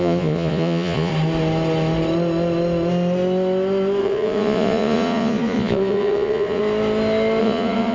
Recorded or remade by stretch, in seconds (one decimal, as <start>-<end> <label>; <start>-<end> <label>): 0.0-1.1 remade; 1.1-4.0 recorded; 4.0-6.6 remade; 6.6-7.4 recorded; 7.4-7.9 remade

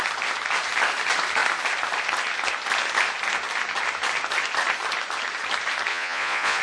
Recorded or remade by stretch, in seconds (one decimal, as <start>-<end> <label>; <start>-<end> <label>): 0.0-5.9 recorded; 5.9-6.6 remade

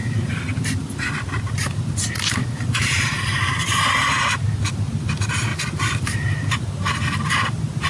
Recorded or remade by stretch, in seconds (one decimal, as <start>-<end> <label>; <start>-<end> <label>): 0.0-1.8 remade; 1.8-2.4 recorded; 2.4-4.1 remade; 4.1-5.5 recorded; 5.5-7.9 remade